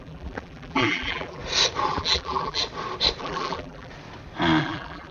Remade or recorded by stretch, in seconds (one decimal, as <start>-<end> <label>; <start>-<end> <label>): 0.0-1.4 remade; 1.4-1.9 recorded; 1.9-2.6 remade; 2.6-3.2 recorded; 3.2-3.9 remade; 3.9-4.6 recorded; 4.6-5.1 remade